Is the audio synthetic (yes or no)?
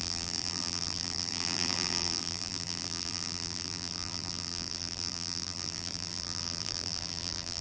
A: yes